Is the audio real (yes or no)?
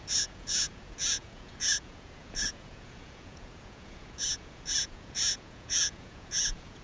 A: no